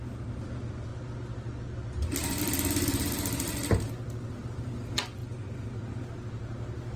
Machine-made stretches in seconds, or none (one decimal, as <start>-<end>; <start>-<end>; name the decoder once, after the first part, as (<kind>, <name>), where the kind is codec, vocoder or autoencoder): none